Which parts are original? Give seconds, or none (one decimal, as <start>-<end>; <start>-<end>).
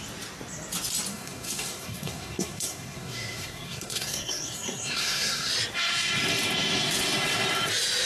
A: 0.0-1.1; 5.5-8.1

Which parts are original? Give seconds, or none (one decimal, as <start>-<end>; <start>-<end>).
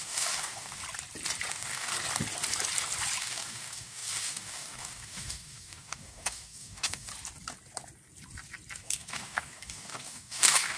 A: 0.8-1.5; 1.9-3.2; 7.1-8.8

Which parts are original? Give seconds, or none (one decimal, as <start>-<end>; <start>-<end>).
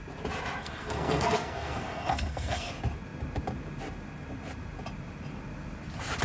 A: 0.0-0.6; 2.7-6.2